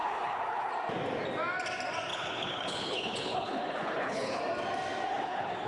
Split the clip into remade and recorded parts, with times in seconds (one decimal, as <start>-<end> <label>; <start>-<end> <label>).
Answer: 0.0-0.7 remade; 0.7-2.1 recorded; 2.1-4.4 remade; 4.4-5.1 recorded; 5.1-5.7 remade